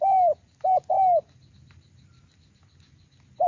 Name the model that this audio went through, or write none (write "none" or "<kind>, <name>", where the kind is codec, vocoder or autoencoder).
none